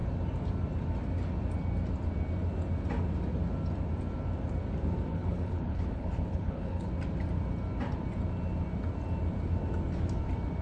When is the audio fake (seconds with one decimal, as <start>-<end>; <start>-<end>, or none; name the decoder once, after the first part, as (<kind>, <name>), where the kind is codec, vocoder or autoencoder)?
5.1-6.9 (codec, HILCodec)